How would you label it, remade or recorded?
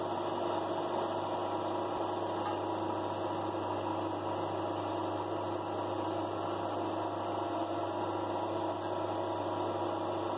recorded